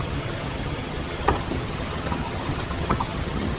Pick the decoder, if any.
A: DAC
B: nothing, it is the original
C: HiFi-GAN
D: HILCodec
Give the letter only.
C